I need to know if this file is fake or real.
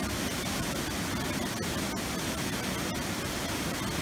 real